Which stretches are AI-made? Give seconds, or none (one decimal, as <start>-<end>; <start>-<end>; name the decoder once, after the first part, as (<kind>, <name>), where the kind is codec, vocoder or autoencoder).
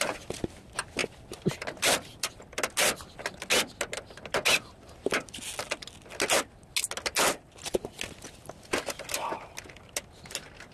none